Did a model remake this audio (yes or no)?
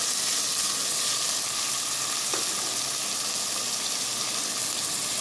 no